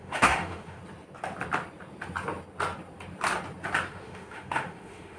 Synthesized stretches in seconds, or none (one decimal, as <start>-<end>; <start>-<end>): 0.0-0.8; 3.9-5.2